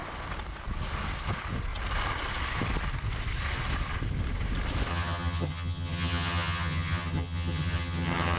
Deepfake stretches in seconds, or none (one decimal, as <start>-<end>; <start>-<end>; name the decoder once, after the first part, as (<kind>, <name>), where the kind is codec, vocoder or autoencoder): 4.9-8.4 (vocoder, HiFi-GAN)